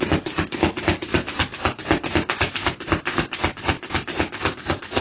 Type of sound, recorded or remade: recorded